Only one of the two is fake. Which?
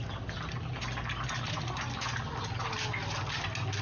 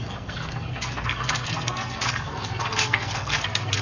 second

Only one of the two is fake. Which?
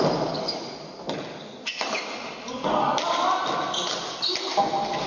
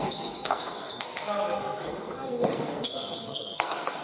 second